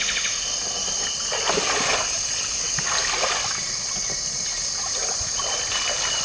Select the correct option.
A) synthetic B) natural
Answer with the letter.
B